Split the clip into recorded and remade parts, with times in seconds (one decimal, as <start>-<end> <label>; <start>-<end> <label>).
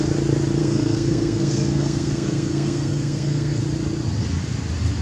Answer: 0.0-0.6 recorded; 0.6-3.6 remade; 3.6-5.0 recorded